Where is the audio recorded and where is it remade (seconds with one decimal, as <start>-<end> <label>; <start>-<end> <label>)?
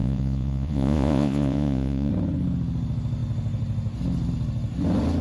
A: 0.0-2.1 remade; 2.1-5.2 recorded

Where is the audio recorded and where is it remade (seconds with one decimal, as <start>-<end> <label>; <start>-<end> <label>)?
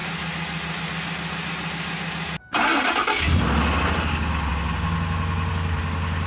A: 0.0-6.3 recorded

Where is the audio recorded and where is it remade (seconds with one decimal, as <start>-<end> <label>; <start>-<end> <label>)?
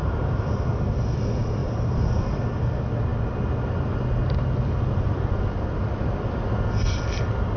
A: 0.0-0.6 remade; 0.6-1.6 recorded; 1.6-2.4 remade; 2.4-7.6 recorded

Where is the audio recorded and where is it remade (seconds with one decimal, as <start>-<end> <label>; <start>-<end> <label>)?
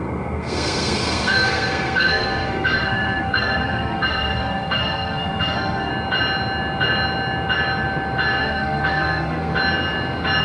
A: 0.0-5.9 remade; 5.9-8.4 recorded; 8.4-9.5 remade; 9.5-10.4 recorded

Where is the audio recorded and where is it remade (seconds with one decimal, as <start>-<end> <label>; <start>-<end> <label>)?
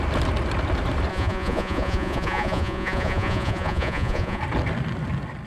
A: 0.0-1.1 recorded; 1.1-4.4 remade; 4.4-5.5 recorded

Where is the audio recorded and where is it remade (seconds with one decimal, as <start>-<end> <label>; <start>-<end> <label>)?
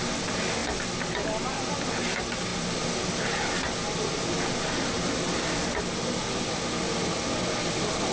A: 0.0-8.1 recorded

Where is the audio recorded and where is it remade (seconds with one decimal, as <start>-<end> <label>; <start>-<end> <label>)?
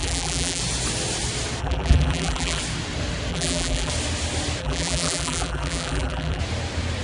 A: 0.0-0.6 remade; 0.6-1.6 recorded; 1.6-2.6 remade; 2.6-3.3 recorded; 3.3-3.9 remade; 3.9-4.6 recorded; 4.6-6.4 remade; 6.4-7.0 recorded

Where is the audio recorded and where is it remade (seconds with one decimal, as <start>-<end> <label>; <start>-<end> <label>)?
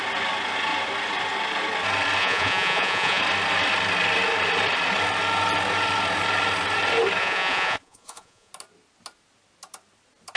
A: 0.0-2.2 recorded; 2.2-3.2 remade; 3.2-7.2 recorded; 7.2-8.5 remade; 8.5-10.4 recorded